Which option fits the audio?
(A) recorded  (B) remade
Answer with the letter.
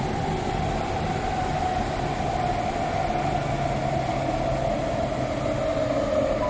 A